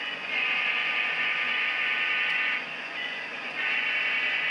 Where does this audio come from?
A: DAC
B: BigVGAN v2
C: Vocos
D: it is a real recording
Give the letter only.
C